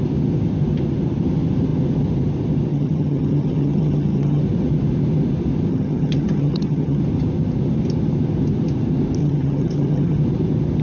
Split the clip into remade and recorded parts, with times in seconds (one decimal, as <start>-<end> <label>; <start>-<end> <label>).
0.0-2.7 recorded; 2.7-4.4 remade; 4.4-5.7 recorded; 5.7-7.0 remade; 7.0-9.2 recorded; 9.2-10.2 remade; 10.2-10.8 recorded